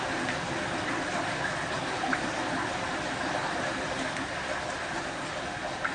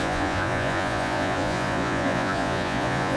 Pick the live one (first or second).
first